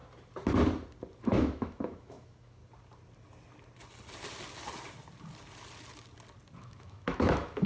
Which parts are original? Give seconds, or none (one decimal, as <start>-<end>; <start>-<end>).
0.0-1.2; 2.6-6.6